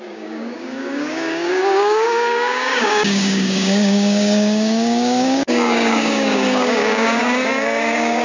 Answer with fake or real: fake